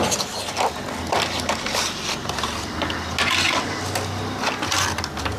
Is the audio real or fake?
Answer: real